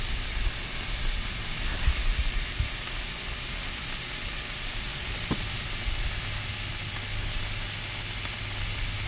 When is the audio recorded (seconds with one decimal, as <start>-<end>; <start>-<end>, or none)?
0.0-9.1